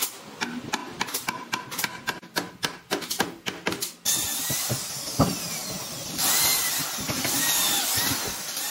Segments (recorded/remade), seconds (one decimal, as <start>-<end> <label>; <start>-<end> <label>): 0.0-0.8 recorded; 0.8-1.6 remade; 1.6-5.6 recorded; 5.6-6.7 remade; 6.7-8.7 recorded

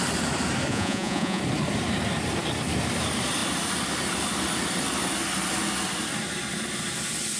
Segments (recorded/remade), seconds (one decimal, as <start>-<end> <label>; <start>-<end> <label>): 0.0-0.7 recorded; 0.7-1.4 remade; 1.4-7.4 recorded

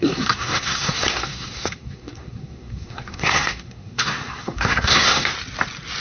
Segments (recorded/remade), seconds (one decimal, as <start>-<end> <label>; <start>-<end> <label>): 0.0-5.3 remade; 5.3-6.0 recorded

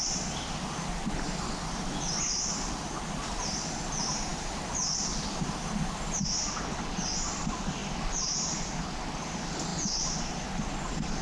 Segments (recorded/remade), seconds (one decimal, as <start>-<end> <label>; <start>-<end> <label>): 0.0-11.2 recorded